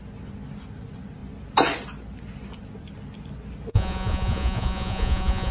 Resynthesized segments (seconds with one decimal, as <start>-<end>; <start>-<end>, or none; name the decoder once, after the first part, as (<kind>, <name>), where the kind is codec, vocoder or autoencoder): 3.7-5.5 (vocoder, Vocos)